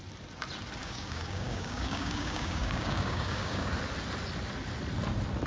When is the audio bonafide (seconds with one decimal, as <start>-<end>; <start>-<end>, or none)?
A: 0.0-0.8; 3.7-5.5